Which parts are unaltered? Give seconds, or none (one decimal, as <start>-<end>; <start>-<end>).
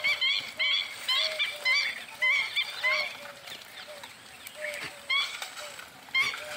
0.0-3.3; 5.6-6.6